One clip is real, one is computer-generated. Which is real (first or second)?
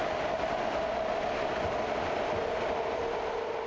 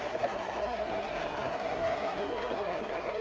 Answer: first